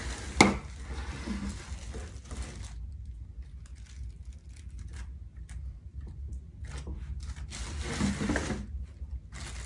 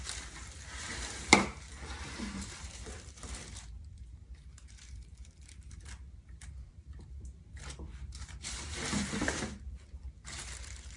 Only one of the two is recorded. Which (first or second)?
first